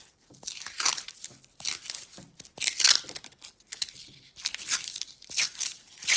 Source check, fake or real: real